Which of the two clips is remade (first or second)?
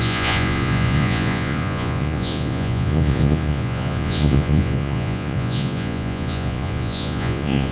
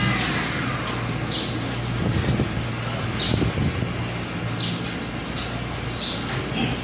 first